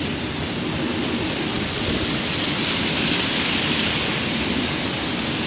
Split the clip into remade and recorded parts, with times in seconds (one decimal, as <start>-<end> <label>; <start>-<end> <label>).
0.0-5.5 recorded